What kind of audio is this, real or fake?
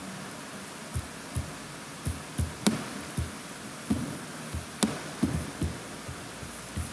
real